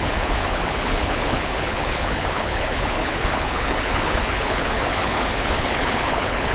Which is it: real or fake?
fake